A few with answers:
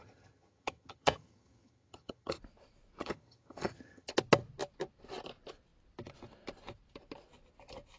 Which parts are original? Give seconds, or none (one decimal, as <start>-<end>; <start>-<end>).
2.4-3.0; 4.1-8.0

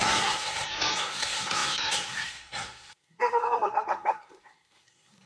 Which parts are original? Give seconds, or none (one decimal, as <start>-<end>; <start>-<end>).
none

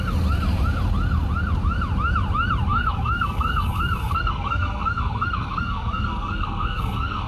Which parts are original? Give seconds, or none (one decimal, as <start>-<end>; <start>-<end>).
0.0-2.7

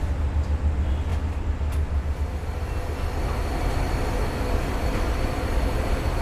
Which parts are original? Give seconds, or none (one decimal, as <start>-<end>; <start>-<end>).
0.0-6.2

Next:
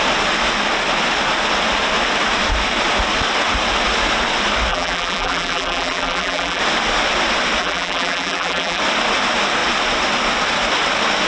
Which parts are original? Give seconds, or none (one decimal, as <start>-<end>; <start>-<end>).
0.0-4.7; 6.6-7.6; 8.8-11.3